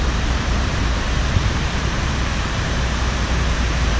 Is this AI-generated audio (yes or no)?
yes